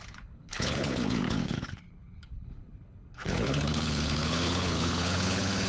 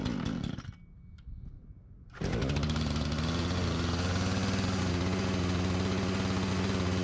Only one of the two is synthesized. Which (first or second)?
first